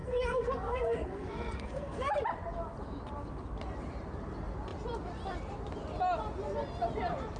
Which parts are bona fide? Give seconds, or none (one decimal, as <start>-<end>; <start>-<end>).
2.1-7.4